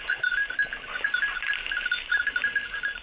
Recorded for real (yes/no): yes